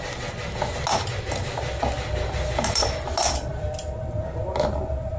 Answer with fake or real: real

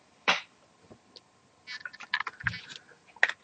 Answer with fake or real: real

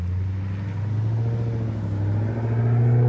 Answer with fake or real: real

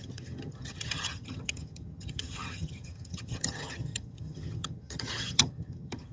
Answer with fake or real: fake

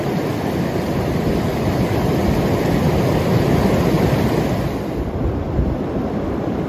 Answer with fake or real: real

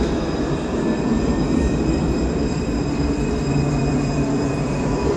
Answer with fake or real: fake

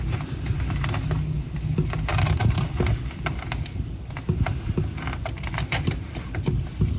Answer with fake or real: real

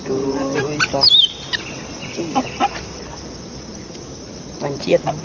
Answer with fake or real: real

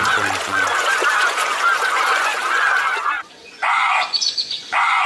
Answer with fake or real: fake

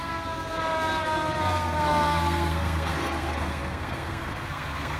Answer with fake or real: fake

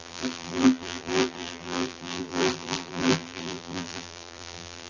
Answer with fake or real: fake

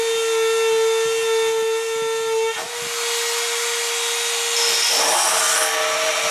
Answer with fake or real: real